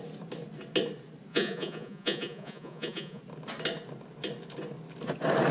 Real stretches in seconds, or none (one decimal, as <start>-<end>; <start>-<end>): 0.0-1.3; 3.2-5.5